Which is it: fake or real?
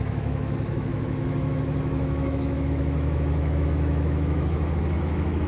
fake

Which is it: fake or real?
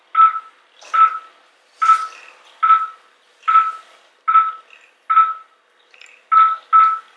real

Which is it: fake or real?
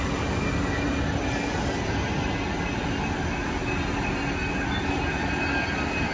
real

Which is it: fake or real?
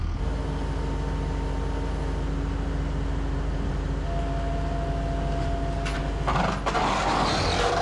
real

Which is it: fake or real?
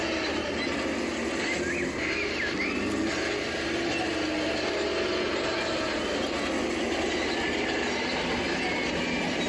real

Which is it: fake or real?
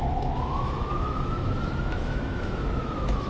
fake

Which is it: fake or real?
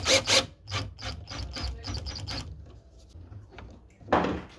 real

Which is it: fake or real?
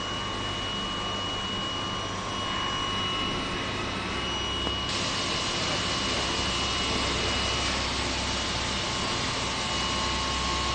real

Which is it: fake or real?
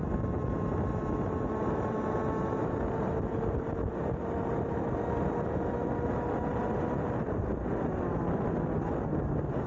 real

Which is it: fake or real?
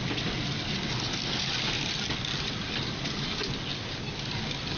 real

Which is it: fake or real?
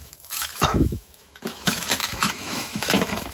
fake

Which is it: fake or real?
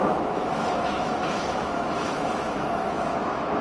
fake